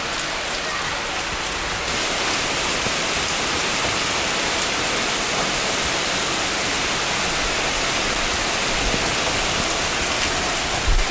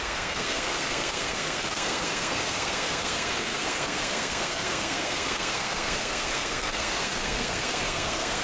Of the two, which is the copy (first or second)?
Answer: second